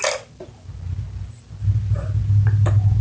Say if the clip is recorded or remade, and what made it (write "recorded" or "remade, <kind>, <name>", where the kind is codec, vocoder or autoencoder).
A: recorded